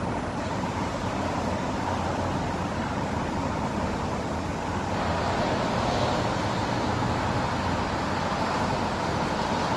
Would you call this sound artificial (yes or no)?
no